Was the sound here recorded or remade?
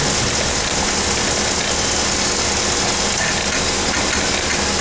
recorded